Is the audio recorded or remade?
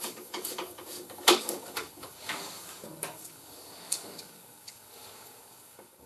remade